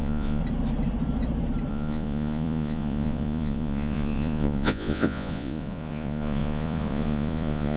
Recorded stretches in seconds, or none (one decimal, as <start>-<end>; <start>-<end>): 0.4-1.7